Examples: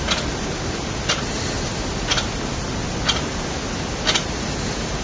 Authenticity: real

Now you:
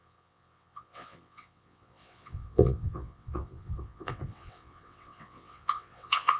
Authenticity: fake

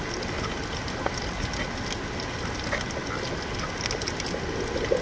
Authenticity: real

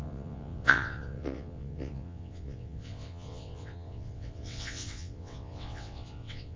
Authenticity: fake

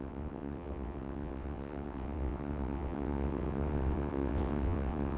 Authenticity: fake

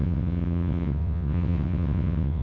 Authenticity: fake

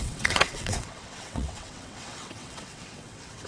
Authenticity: fake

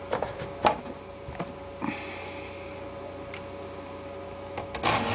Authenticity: real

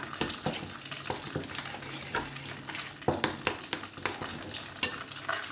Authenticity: real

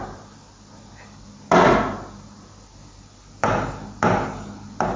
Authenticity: real